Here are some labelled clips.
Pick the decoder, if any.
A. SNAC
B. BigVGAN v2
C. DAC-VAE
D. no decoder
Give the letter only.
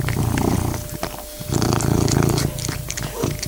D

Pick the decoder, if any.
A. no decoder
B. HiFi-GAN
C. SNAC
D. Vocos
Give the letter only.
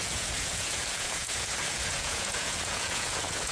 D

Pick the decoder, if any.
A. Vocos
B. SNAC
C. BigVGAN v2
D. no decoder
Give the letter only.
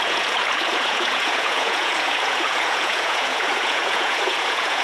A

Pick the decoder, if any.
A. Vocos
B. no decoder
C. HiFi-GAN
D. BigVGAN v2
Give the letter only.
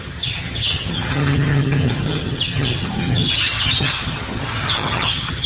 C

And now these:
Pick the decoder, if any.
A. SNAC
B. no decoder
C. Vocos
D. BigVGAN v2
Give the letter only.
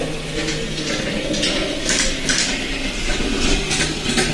B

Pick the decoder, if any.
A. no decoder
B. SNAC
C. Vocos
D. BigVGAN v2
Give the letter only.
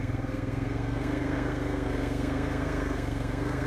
B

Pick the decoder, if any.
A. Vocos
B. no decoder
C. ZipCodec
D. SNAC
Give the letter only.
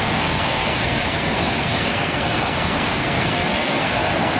D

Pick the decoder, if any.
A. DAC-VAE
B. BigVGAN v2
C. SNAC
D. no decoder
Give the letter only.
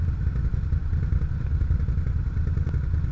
D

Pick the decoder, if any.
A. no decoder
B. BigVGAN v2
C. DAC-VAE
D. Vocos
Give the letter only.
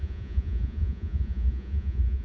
D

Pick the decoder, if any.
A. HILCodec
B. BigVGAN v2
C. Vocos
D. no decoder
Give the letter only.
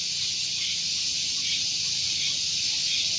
D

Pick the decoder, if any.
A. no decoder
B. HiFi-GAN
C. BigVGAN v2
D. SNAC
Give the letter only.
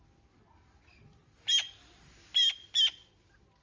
A